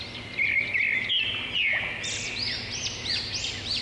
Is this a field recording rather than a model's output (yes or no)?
yes